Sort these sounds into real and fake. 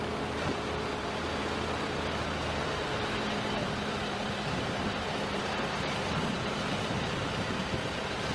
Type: fake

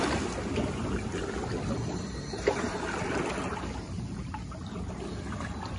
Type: real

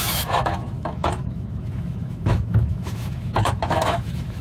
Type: fake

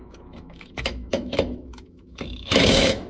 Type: fake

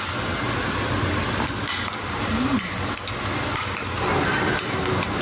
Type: real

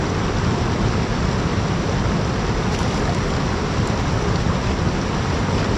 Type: real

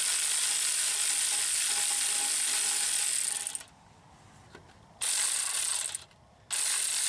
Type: real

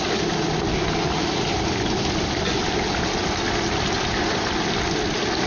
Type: real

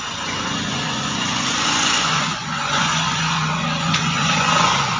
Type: fake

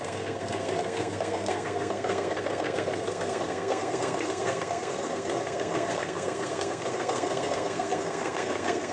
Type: fake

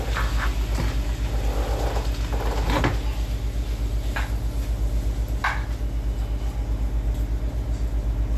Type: real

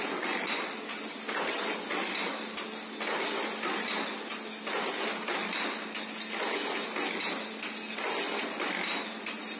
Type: real